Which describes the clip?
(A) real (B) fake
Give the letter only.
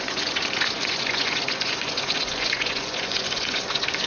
B